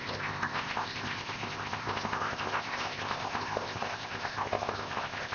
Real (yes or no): no